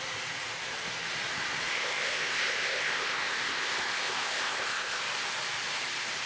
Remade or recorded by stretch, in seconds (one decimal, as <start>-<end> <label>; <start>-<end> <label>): 0.0-1.7 recorded; 1.7-5.0 remade; 5.0-6.3 recorded